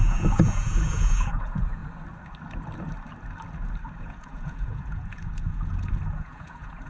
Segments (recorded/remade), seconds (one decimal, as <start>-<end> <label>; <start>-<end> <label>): 0.0-1.8 remade; 1.8-4.0 recorded; 4.0-6.9 remade